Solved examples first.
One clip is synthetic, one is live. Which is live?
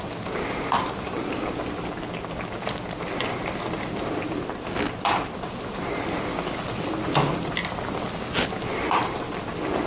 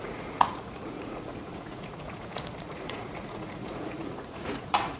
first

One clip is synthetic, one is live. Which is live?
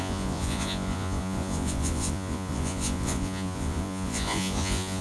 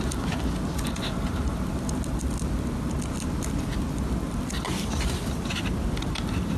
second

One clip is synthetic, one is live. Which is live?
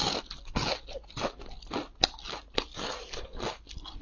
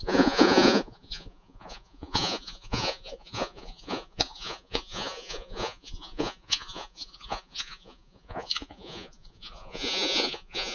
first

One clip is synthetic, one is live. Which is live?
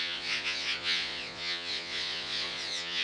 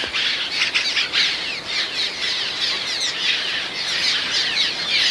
second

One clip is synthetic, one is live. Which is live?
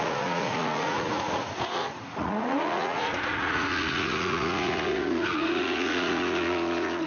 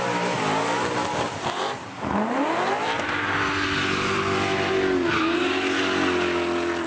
second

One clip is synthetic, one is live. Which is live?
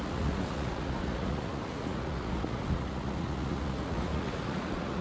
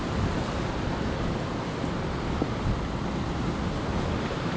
second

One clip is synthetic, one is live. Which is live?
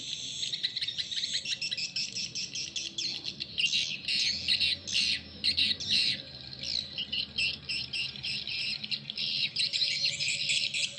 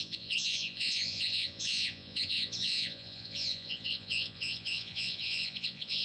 first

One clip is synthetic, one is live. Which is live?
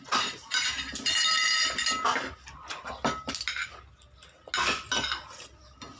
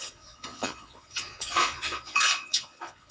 first